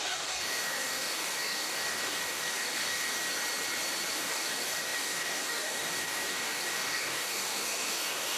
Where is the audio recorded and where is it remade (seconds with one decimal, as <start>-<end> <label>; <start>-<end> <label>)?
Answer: 0.0-3.1 remade; 3.1-4.1 recorded; 4.1-8.4 remade